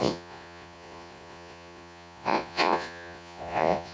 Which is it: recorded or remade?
remade